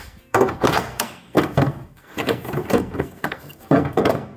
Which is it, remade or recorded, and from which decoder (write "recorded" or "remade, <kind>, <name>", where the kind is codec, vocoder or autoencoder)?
remade, codec, SNAC